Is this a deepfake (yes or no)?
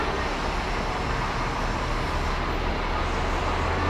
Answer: no